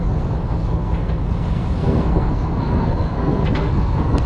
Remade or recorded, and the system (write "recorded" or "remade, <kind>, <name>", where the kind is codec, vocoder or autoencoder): remade, codec, SNAC